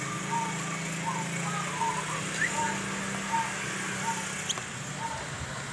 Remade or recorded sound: recorded